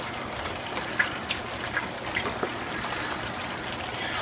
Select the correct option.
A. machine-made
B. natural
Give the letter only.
B